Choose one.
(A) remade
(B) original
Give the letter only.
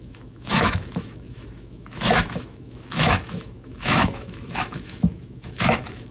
A